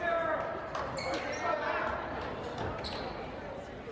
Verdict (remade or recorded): recorded